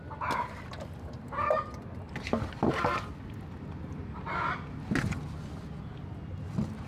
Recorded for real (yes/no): yes